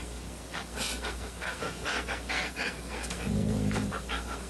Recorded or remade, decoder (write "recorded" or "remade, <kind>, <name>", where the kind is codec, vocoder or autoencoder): remade, codec, SNAC